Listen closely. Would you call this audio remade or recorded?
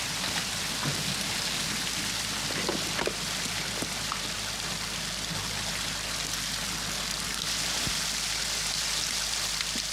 recorded